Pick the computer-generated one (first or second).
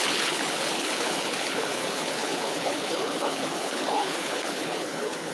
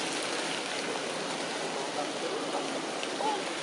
first